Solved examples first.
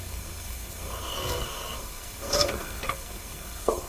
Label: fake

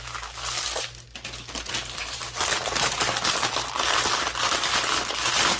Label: real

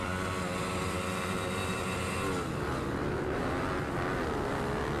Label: real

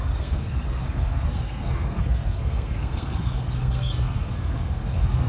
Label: fake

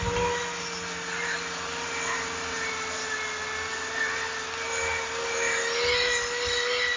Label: real